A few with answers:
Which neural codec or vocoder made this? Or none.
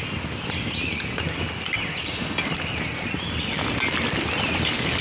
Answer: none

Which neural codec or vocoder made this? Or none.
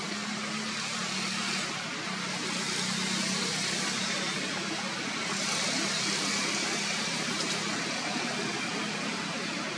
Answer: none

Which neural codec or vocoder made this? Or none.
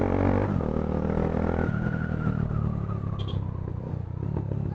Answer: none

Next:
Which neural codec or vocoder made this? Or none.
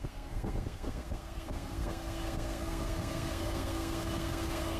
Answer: codec, SNAC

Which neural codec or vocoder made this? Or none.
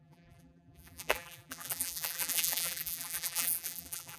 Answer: vocoder, BigVGAN v2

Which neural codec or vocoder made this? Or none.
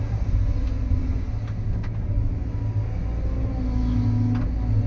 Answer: none